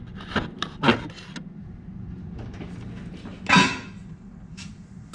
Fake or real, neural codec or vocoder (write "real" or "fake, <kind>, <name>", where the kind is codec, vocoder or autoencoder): real